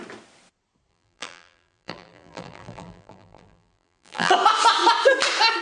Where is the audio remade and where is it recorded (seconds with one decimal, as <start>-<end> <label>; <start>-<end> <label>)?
0.0-0.9 recorded; 0.9-4.3 remade; 4.3-5.6 recorded